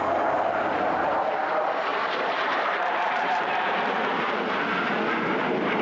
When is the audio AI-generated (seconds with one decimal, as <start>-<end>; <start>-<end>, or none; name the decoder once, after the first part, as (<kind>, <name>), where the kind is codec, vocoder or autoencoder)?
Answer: 1.9-4.6 (vocoder, BigVGAN v2)